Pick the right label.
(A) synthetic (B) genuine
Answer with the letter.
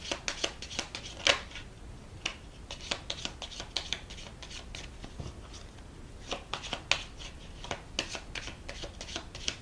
B